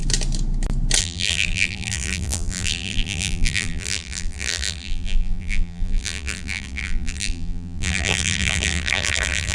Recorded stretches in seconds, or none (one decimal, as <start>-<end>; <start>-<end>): 0.0-1.0